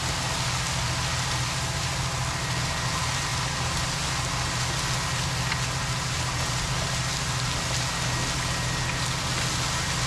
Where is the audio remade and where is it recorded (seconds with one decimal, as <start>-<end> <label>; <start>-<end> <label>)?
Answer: 0.0-10.1 recorded